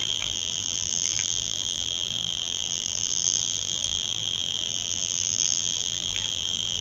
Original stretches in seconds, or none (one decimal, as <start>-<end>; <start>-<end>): none